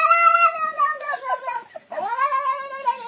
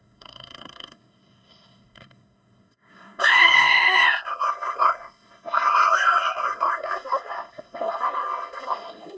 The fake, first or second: second